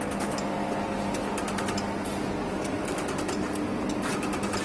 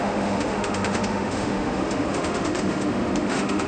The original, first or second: first